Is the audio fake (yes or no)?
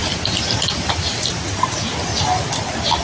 no